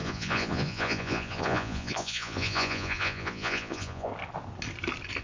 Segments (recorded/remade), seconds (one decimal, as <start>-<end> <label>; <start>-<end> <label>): 0.0-4.1 remade; 4.1-5.2 recorded